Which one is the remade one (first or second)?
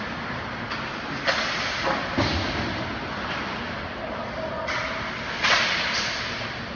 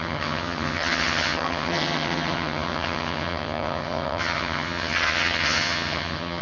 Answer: second